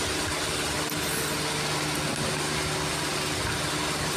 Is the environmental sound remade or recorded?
recorded